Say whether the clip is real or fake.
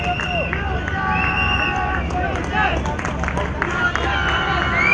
real